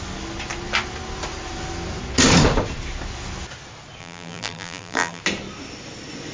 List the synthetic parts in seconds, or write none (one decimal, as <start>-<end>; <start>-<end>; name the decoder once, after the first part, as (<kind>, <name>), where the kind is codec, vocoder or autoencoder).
4.0-5.2 (vocoder, BigVGAN v2)